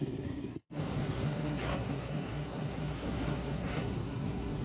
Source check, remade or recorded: remade